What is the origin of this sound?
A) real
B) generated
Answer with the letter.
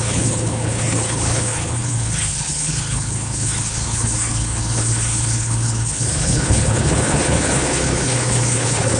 B